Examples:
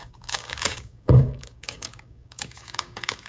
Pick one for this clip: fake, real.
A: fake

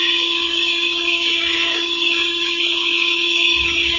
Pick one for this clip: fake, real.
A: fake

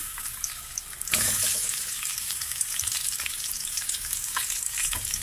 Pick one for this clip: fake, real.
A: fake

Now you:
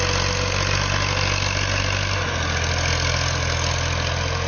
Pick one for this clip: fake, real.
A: real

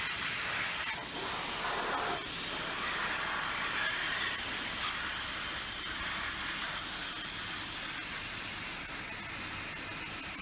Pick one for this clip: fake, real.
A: real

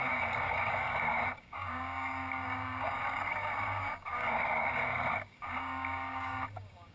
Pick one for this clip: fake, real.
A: fake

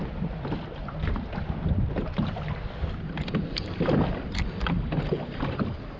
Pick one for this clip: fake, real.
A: real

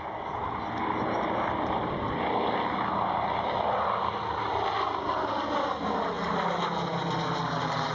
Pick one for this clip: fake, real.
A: real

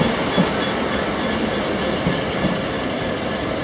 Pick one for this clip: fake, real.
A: real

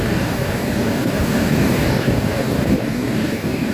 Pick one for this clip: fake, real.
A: fake